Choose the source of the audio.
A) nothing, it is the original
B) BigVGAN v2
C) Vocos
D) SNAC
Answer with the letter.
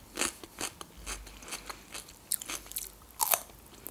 A